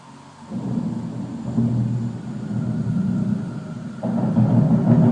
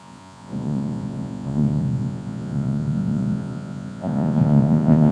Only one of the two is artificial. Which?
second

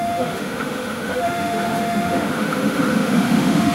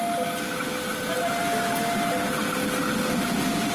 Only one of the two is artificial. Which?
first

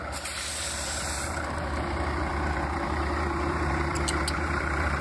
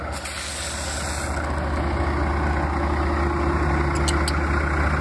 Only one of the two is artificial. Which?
first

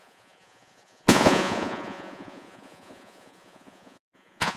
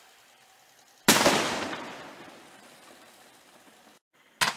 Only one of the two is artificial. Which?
first